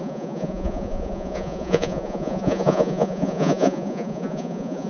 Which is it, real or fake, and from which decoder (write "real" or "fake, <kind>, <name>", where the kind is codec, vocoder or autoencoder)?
fake, vocoder, Vocos